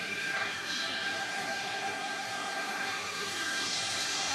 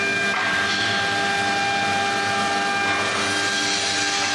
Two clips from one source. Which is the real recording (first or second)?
second